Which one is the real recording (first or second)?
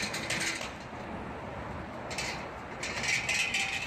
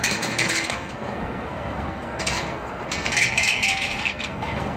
first